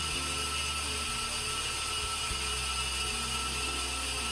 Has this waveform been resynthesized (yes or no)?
no